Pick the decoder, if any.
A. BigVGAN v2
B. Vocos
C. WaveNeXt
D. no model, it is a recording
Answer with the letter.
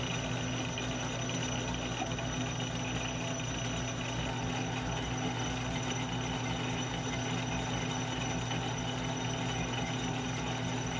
D